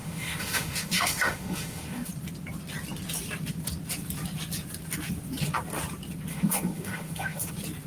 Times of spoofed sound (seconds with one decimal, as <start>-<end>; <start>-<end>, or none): 0.0-2.1; 6.3-7.5